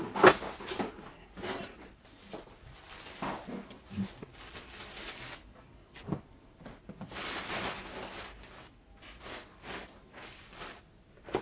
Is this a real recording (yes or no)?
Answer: yes